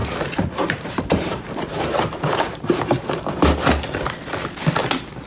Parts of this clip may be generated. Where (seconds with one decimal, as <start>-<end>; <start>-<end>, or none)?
0.0-3.2; 4.8-5.3